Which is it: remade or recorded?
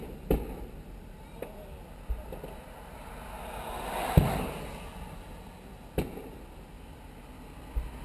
recorded